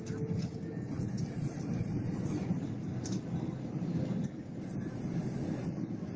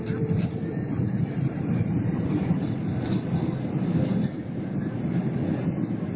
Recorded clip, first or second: first